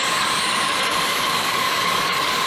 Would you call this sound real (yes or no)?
no